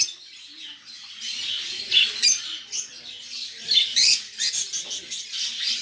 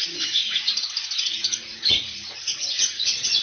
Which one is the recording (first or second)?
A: first